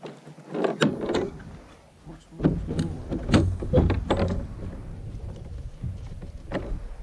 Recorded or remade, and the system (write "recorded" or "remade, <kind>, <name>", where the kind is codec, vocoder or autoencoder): recorded